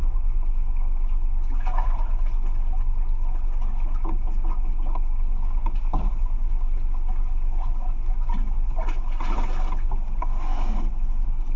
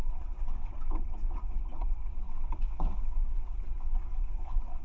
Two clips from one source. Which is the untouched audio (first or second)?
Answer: first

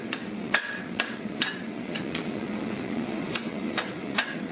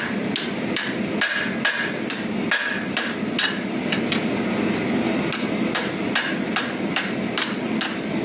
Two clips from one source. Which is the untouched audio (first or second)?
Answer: second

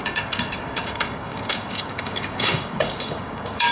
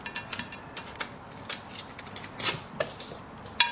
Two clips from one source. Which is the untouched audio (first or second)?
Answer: second